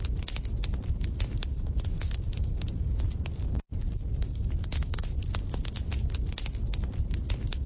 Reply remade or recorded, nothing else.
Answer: recorded